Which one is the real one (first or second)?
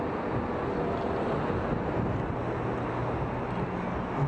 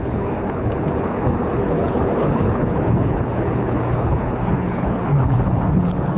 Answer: first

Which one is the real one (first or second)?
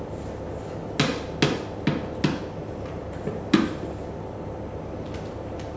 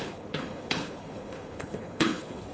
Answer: first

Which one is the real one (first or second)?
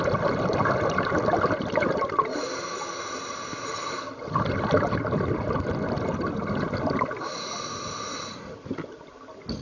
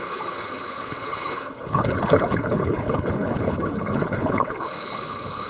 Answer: first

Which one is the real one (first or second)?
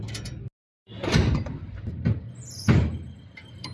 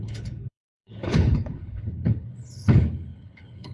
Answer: first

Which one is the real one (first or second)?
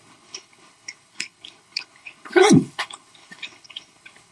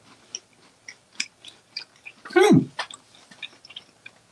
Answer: second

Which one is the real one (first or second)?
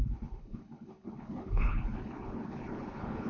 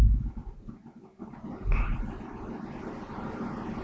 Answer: second